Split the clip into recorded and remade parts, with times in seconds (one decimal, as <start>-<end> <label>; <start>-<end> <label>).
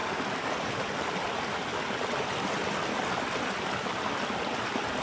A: 0.0-5.0 recorded